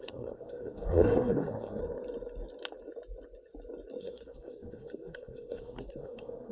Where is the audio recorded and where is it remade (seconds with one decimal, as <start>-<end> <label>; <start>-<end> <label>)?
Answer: 0.0-1.8 remade; 1.8-4.0 recorded; 4.0-6.5 remade